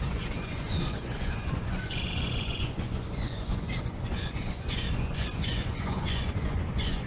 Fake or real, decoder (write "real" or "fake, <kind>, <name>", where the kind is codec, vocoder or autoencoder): fake, vocoder, Vocos